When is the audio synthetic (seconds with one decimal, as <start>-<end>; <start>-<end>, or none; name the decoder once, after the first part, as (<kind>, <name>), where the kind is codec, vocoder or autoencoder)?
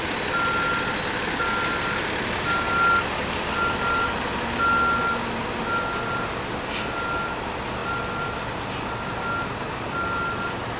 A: none